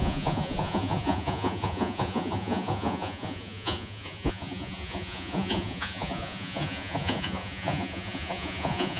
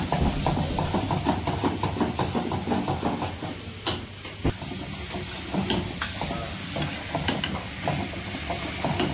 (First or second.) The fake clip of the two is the first